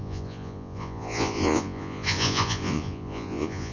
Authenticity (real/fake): fake